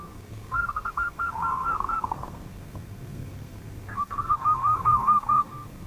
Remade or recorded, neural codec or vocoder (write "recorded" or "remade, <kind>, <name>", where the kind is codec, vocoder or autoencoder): remade, codec, SNAC